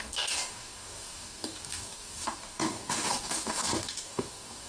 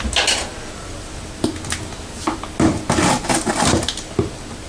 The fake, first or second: first